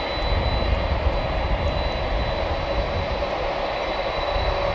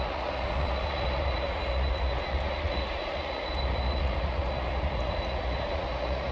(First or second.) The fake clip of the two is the second